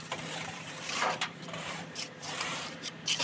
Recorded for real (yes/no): no